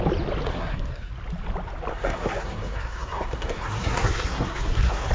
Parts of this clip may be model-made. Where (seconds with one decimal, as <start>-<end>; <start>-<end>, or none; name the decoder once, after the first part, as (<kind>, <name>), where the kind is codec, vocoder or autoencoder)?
0.5-1.1 (codec, SNAC); 1.9-5.1